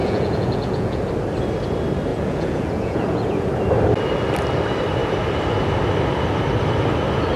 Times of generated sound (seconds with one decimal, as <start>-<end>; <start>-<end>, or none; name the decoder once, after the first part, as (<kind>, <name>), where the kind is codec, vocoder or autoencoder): 0.0-1.0 (vocoder, Vocos); 2.1-3.5